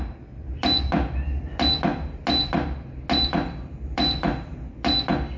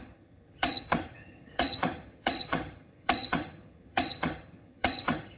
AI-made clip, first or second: second